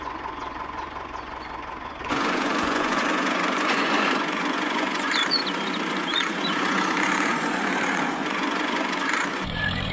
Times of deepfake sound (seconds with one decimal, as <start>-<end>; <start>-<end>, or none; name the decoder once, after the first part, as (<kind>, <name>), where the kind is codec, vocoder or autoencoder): 0.0-5.4 (vocoder, Vocos); 5.9-9.9